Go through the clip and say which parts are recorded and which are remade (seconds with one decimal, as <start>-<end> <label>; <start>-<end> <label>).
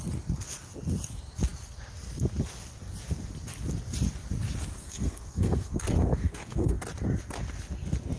0.0-4.8 recorded; 4.8-6.8 remade; 6.8-8.2 recorded